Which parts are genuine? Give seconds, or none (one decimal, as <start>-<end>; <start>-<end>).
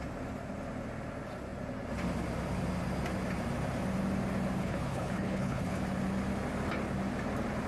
0.0-4.6; 5.8-7.7